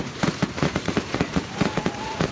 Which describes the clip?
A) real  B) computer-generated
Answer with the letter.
B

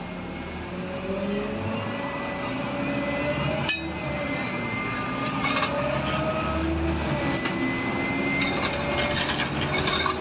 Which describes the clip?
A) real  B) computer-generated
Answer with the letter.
A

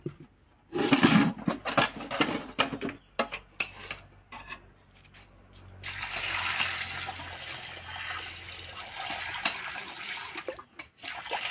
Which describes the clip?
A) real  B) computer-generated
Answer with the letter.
A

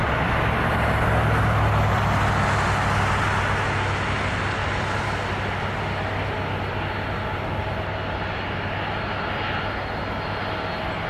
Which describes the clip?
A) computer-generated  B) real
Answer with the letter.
B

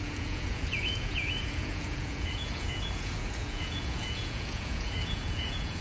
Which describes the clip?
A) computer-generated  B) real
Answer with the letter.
A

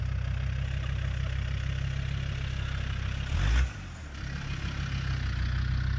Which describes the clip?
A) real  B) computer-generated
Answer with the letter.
A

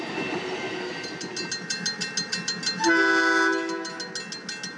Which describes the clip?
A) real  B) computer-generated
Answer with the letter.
A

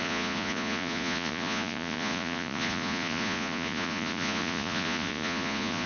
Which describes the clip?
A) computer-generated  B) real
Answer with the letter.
A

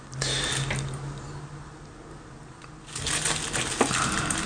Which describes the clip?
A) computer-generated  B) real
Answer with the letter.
B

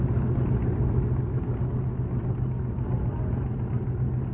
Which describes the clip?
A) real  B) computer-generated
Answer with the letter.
A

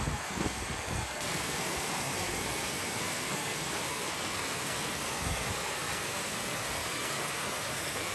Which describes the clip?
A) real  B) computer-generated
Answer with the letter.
B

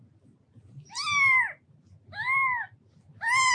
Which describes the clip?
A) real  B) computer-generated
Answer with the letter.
A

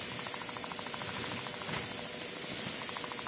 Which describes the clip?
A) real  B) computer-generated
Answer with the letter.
A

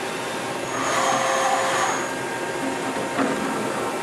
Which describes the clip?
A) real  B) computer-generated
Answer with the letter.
A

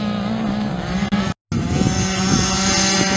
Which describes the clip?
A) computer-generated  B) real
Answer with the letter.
B